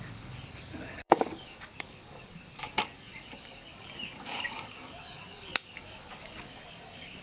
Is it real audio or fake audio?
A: fake